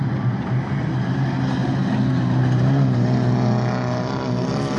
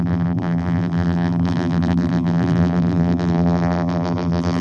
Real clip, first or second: first